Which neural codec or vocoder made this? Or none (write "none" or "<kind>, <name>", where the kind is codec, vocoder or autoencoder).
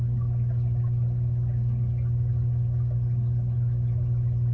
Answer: none